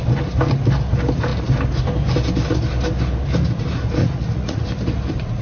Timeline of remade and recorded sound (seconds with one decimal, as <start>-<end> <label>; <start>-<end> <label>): 0.0-4.0 recorded; 4.0-4.6 remade; 4.6-5.4 recorded